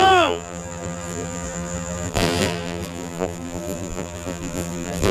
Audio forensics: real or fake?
fake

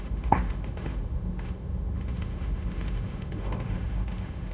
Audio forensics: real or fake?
fake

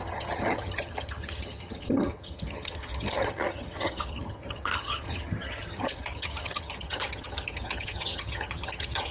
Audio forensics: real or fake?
fake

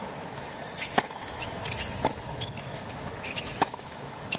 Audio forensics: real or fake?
fake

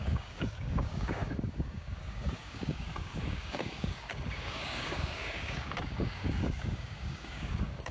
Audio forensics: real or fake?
fake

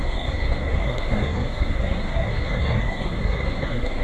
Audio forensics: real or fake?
fake